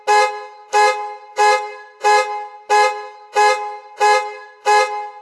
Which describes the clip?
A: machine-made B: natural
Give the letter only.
B